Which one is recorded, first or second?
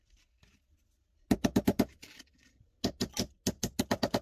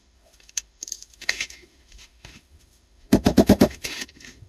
first